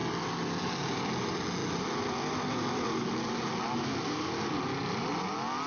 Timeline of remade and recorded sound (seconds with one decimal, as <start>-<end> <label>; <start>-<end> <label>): 0.0-5.7 recorded